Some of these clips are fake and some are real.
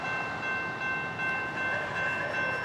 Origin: real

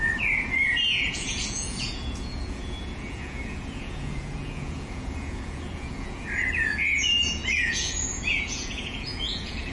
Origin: fake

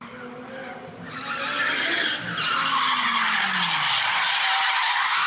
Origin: real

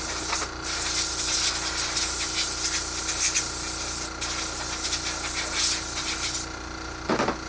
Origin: real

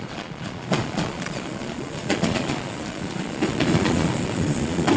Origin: fake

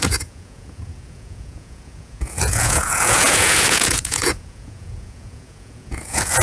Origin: fake